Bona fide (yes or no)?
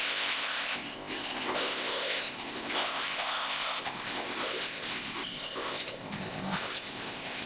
no